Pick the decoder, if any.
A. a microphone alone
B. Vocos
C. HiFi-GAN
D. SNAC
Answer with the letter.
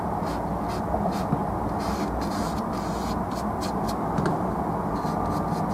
A